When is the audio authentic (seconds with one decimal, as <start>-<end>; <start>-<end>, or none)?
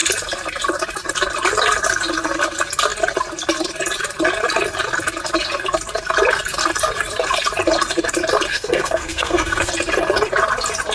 0.0-8.5; 9.7-10.9